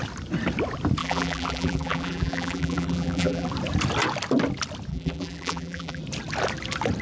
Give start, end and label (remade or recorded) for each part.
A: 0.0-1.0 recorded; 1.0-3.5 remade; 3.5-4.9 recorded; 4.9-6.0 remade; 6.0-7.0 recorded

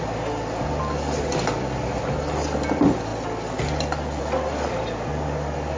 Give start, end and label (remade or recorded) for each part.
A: 0.0-5.8 recorded

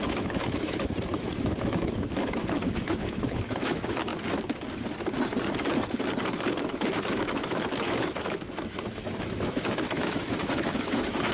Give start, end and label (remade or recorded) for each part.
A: 0.0-4.1 remade; 4.1-6.7 recorded; 6.7-11.3 remade

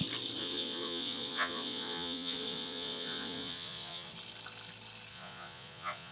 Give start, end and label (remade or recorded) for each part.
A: 0.0-0.4 recorded; 0.4-4.1 remade; 4.1-5.1 recorded; 5.1-6.1 remade